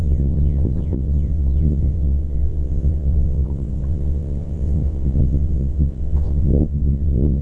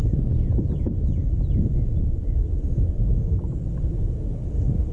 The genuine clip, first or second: second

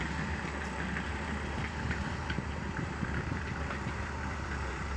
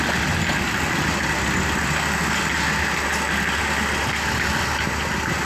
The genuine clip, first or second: second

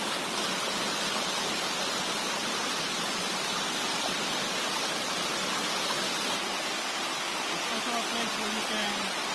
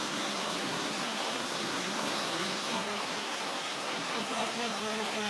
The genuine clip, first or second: first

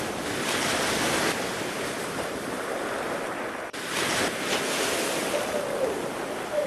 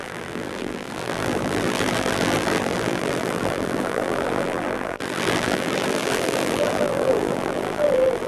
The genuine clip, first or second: first